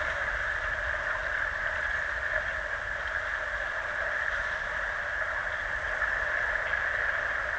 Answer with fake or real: real